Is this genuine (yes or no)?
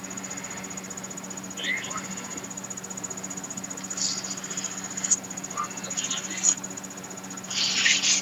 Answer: yes